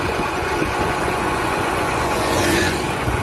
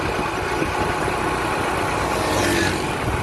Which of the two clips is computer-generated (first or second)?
first